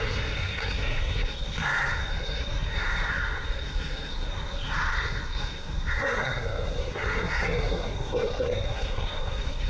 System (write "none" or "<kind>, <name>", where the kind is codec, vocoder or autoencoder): codec, SNAC